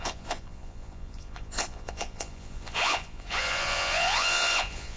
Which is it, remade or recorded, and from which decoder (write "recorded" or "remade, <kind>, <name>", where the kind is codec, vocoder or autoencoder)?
remade, vocoder, Vocos